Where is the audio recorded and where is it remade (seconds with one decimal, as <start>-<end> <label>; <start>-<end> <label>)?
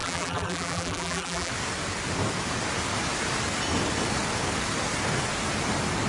0.0-1.5 remade; 1.5-6.1 recorded